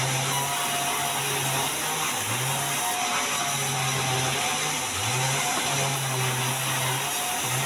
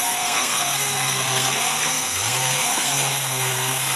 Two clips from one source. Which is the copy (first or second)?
second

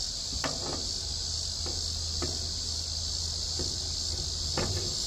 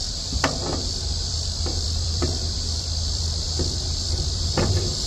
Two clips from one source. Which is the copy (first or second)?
second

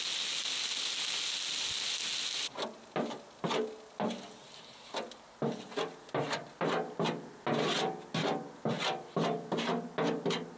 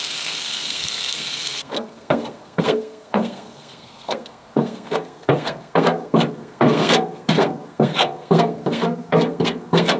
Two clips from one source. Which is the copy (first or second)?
second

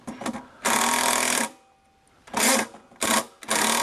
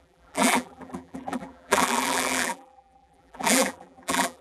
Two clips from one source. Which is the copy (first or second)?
second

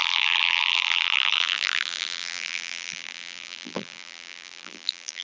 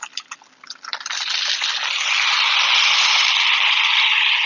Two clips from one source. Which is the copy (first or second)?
first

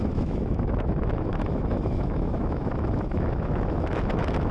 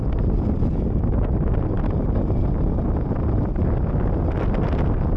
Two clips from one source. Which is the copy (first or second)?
first